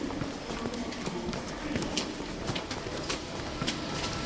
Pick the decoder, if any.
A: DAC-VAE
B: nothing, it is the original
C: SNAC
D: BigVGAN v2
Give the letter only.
B